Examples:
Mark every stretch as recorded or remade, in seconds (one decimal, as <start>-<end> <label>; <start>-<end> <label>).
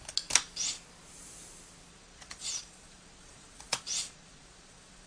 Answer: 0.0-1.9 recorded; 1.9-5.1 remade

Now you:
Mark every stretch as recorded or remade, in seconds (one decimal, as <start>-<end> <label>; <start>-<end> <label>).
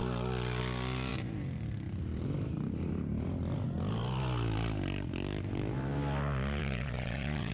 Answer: 0.0-6.6 recorded; 6.6-7.5 remade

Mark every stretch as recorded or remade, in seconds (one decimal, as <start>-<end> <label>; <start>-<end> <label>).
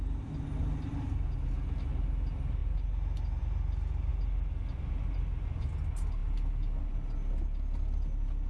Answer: 0.0-8.5 recorded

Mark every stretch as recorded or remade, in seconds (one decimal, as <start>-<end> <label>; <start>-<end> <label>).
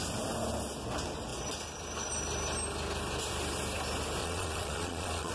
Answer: 0.0-4.2 recorded; 4.2-5.3 remade